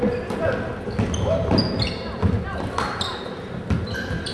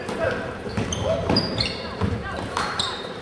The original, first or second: first